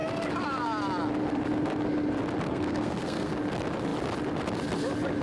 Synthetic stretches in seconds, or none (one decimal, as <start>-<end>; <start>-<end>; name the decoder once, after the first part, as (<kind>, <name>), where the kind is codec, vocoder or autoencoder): 2.5-3.3 (codec, SNAC)